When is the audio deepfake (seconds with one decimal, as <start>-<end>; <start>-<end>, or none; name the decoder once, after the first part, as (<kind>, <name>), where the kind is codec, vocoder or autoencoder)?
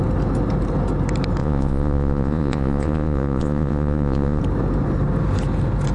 1.4-4.4 (vocoder, Vocos)